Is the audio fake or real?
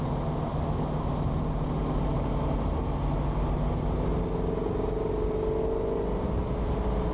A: real